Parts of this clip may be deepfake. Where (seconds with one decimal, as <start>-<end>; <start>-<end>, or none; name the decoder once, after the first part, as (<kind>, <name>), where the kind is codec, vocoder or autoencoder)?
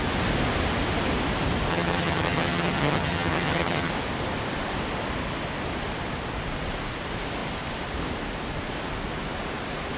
1.7-3.9 (vocoder, HiFi-GAN)